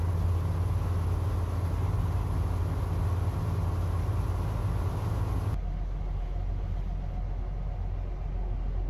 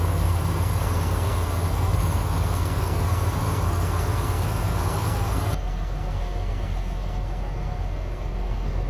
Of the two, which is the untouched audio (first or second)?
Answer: first